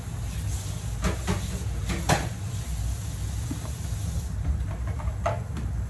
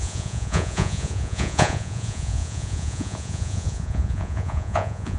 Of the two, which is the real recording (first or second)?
first